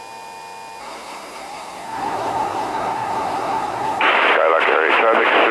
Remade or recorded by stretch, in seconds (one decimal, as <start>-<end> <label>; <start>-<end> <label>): 0.0-0.8 recorded; 0.8-4.1 remade; 4.1-5.5 recorded

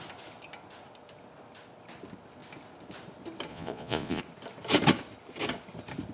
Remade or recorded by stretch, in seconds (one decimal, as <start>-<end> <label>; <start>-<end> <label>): 0.0-3.5 recorded; 3.5-4.2 remade; 4.2-6.1 recorded

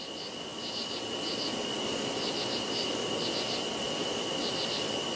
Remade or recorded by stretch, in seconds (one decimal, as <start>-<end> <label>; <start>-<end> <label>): 0.0-5.2 recorded

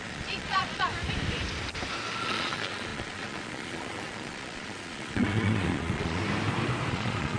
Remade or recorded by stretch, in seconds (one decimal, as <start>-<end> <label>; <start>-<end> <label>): 0.0-0.9 remade; 0.9-2.2 recorded; 2.2-6.2 remade; 6.2-6.9 recorded; 6.9-7.4 remade